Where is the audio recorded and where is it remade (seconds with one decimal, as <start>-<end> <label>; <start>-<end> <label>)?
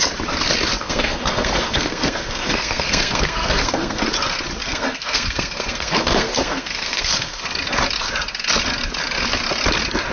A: 0.0-0.8 recorded; 0.8-4.0 remade; 4.0-4.6 recorded; 4.6-7.4 remade; 7.4-10.1 recorded